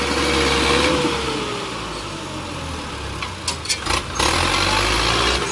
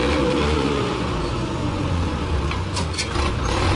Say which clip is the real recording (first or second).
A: first